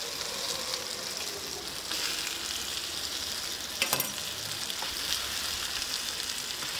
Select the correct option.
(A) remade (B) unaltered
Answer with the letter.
B